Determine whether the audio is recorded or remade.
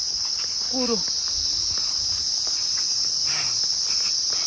recorded